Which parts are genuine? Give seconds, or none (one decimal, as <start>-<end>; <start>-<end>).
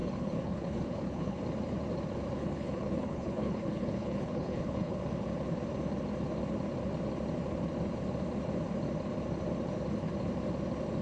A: 1.4-2.4; 5.0-11.0